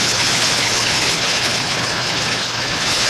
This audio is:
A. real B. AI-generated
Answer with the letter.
B